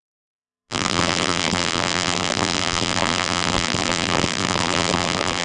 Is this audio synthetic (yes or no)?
yes